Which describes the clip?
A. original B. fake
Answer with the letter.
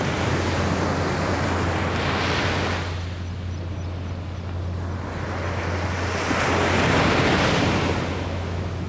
A